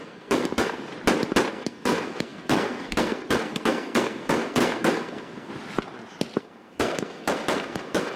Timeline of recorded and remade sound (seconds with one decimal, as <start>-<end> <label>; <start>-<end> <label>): 0.0-0.9 remade; 0.9-1.5 recorded; 1.5-5.5 remade; 5.5-6.4 recorded; 6.4-8.2 remade